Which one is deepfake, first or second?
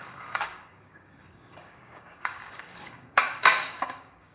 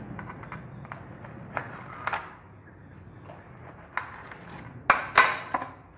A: first